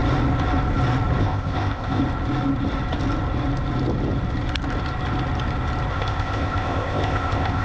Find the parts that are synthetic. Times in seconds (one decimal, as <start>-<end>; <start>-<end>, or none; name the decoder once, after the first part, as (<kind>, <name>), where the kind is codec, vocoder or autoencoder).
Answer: 1.2-2.0 (codec, ZipCodec); 5.9-7.6